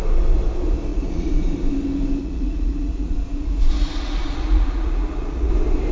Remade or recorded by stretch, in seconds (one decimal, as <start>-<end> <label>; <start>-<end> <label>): 0.0-0.9 recorded; 0.9-1.4 remade; 1.4-2.2 recorded; 2.2-5.5 remade; 5.5-5.9 recorded